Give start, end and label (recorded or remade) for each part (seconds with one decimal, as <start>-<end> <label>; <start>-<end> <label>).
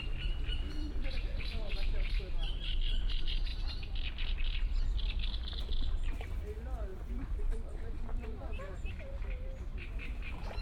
0.0-1.2 recorded; 1.2-2.2 remade; 2.2-6.9 recorded; 6.9-9.9 remade; 9.9-10.6 recorded